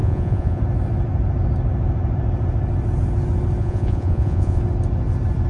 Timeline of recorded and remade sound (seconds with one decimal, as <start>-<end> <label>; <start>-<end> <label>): 0.0-0.6 remade; 0.6-3.6 recorded; 3.6-4.6 remade; 4.6-5.5 recorded

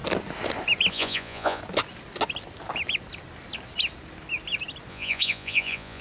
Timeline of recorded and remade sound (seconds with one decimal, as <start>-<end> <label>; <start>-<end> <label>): 0.0-0.9 recorded; 0.9-1.6 remade; 1.6-4.9 recorded; 4.9-6.0 remade

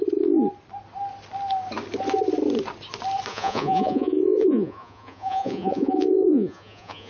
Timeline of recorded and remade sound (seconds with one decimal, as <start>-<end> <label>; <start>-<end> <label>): 0.0-3.3 recorded; 3.3-7.1 remade

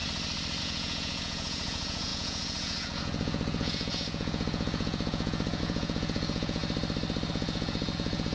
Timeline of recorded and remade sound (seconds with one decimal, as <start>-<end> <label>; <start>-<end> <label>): 0.0-0.6 recorded; 0.6-6.6 remade; 6.6-7.3 recorded; 7.3-8.3 remade